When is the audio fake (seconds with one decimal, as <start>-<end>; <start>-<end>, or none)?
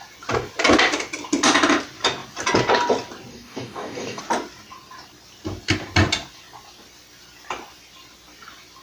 3.3-4.2